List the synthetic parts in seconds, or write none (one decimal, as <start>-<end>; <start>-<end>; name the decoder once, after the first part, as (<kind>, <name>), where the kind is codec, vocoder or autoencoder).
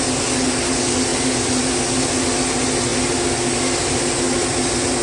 1.1-1.8 (vocoder, BigVGAN v2)